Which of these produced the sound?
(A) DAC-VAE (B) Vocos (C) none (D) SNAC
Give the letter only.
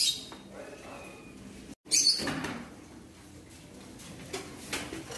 C